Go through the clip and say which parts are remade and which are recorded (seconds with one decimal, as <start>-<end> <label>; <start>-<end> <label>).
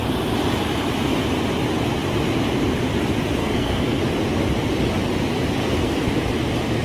0.0-3.4 recorded; 3.4-4.0 remade; 4.0-5.6 recorded; 5.6-6.1 remade; 6.1-6.8 recorded